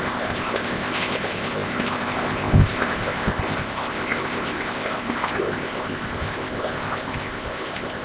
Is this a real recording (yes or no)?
no